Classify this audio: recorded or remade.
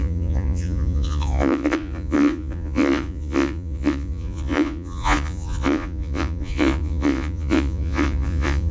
remade